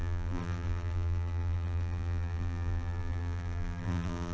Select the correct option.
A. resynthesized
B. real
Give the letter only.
A